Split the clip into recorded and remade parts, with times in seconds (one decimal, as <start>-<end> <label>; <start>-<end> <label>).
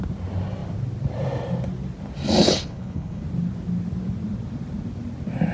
0.0-2.4 recorded; 2.4-3.2 remade; 3.2-5.5 recorded